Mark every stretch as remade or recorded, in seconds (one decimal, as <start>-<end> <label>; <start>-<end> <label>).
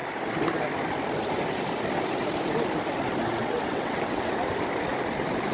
0.0-3.4 recorded; 3.4-4.3 remade; 4.3-5.5 recorded